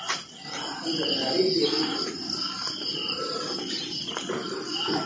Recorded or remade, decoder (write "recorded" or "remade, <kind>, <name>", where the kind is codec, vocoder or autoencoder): recorded